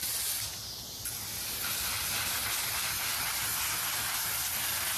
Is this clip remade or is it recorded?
recorded